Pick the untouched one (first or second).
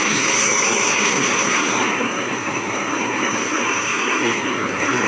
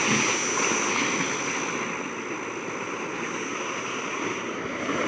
second